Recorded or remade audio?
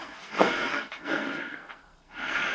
remade